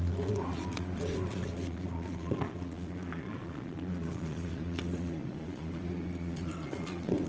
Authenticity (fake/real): fake